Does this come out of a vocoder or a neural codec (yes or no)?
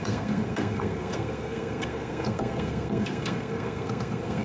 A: yes